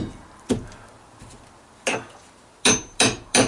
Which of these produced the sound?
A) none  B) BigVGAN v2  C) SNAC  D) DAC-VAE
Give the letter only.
B